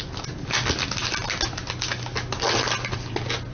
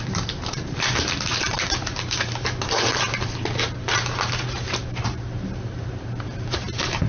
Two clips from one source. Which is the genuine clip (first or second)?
first